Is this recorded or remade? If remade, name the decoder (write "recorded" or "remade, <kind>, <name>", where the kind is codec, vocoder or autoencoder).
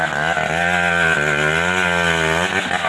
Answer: recorded